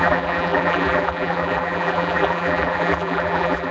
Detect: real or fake fake